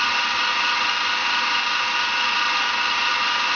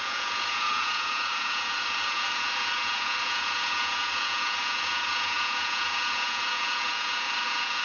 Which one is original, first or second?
first